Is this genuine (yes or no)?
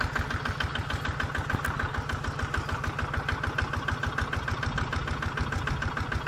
yes